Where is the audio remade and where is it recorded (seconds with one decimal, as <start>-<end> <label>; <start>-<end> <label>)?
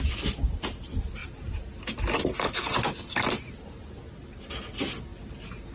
0.0-5.7 recorded